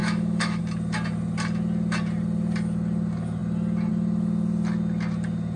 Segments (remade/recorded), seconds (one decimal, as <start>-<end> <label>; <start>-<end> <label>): 0.0-0.6 remade; 0.6-5.6 recorded